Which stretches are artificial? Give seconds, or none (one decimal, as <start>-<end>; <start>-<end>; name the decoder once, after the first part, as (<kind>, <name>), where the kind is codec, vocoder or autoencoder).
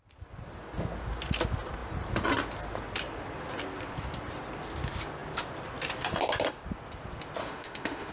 7.4-8.1 (autoencoder, DAC-VAE)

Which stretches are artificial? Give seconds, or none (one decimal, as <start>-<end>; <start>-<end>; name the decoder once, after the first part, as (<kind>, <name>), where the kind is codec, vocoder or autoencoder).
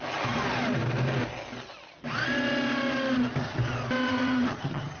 4.1-5.0 (vocoder, HiFi-GAN)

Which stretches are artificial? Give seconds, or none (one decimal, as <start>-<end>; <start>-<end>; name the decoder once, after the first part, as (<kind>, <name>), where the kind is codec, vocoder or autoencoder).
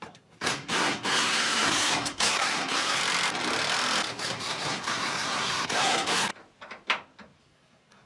0.0-3.0 (codec, SNAC); 4.1-6.3; 7.4-8.1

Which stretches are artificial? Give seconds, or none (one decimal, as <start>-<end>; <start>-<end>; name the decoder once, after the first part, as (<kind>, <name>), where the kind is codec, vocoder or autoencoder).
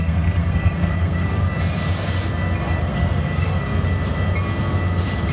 0.0-1.4 (codec, SNAC); 2.8-3.6